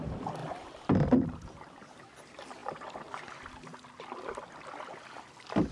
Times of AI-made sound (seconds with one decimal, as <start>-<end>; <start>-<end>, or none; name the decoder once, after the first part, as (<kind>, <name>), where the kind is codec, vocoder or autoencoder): 2.6-3.1 (vocoder, BigVGAN v2)